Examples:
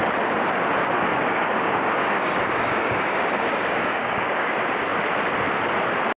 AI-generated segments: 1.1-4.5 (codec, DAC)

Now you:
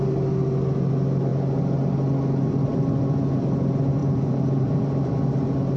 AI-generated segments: 4.0-5.1 (vocoder, BigVGAN v2)

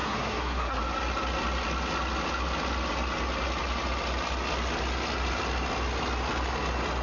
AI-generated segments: 0.0-0.8 (codec, SNAC)